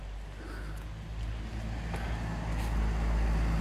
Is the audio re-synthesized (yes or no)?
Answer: no